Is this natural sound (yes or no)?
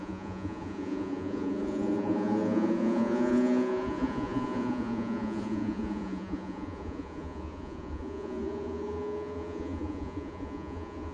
no